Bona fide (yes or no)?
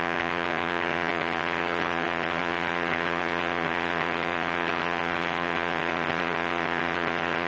no